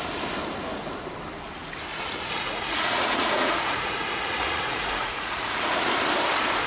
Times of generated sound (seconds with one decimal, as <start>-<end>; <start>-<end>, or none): 1.9-5.9